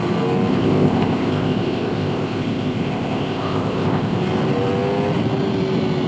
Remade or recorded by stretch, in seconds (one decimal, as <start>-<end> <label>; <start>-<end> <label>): 0.0-0.5 recorded; 0.5-4.2 remade; 4.2-6.1 recorded